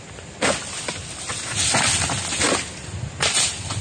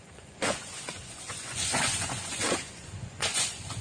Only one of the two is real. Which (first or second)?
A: first